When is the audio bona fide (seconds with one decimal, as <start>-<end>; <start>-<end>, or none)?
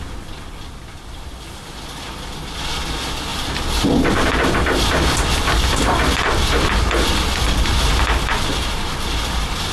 0.0-9.7